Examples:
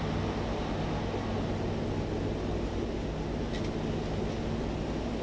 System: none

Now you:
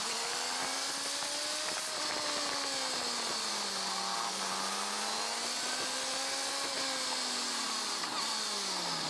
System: none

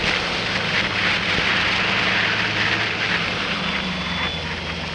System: none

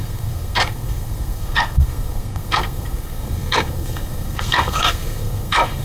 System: codec, SNAC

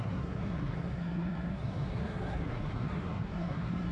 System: codec, SNAC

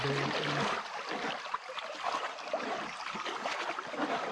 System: none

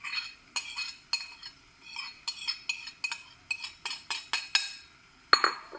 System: none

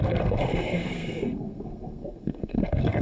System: codec, SNAC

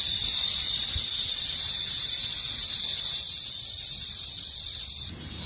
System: none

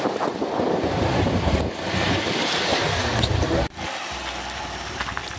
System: none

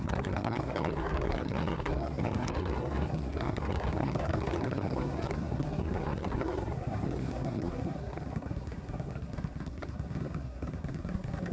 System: codec, SNAC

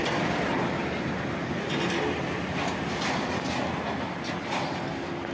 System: none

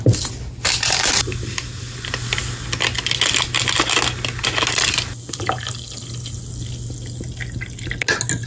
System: none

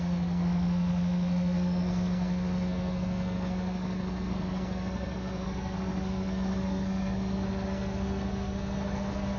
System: codec, SNAC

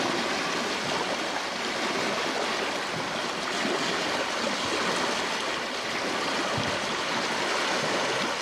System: none